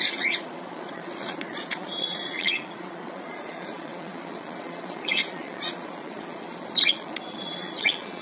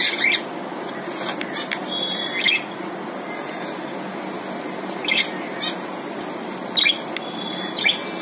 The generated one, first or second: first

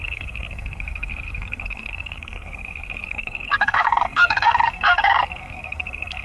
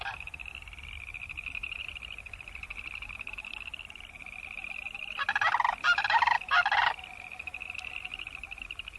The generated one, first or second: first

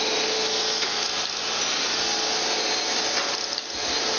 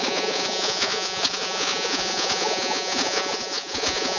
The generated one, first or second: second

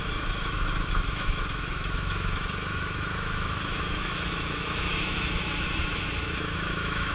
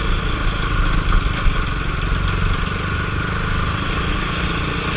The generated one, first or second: first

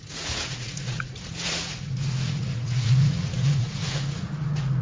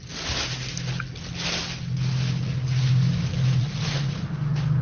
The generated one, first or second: first